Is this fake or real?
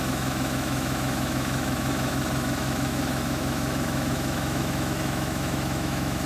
fake